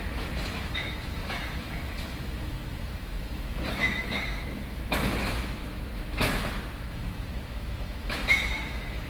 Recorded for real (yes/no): no